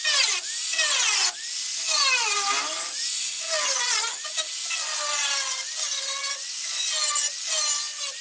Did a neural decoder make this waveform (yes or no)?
no